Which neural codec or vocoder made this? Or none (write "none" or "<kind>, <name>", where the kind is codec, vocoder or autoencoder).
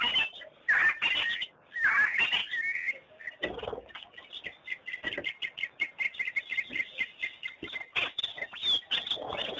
none